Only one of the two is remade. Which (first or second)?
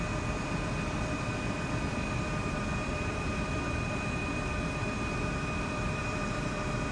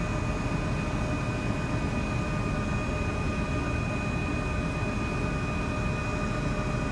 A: first